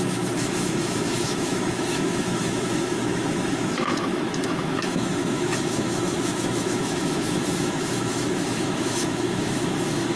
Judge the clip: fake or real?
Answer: fake